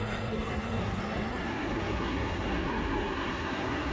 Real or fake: fake